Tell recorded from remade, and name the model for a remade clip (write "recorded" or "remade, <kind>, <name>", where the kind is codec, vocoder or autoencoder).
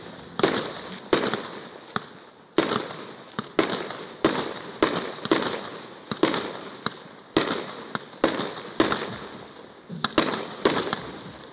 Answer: recorded